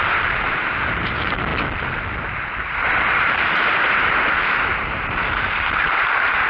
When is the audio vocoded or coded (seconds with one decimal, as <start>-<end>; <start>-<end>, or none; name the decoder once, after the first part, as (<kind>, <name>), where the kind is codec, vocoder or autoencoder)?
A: 0.0-1.5 (vocoder, BigVGAN v2); 3.1-6.5